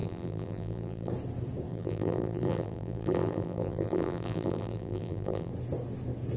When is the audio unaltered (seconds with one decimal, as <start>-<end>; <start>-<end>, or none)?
1.1-1.7; 5.5-6.4